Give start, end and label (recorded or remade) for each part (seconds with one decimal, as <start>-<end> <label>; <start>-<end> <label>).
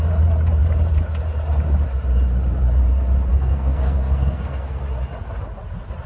0.0-3.3 recorded; 3.3-4.8 remade; 4.8-6.1 recorded